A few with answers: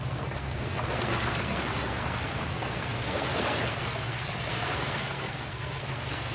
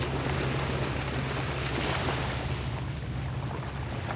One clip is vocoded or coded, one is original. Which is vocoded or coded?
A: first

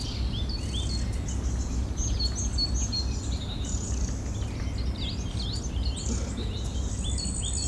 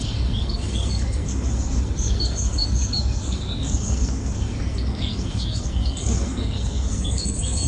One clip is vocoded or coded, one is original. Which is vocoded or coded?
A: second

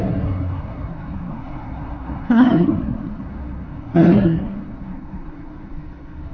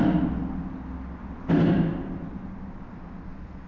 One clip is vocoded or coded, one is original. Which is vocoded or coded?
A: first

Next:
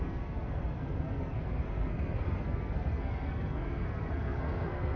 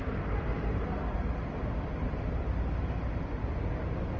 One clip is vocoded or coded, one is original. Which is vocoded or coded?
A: first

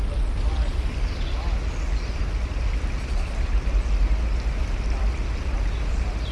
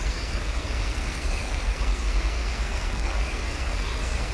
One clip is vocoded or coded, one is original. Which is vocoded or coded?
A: second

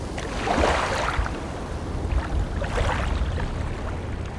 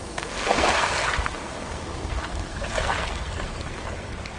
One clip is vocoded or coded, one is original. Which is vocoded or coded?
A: second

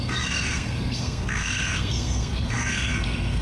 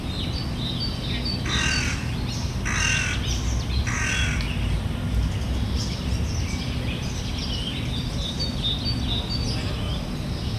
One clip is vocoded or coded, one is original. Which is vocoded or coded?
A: first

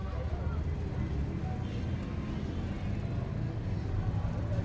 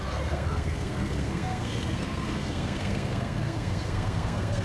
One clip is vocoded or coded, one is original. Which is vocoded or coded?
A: second